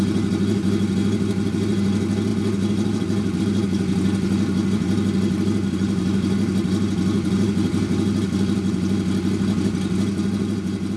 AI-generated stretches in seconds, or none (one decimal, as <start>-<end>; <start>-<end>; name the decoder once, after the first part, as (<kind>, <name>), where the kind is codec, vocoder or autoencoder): none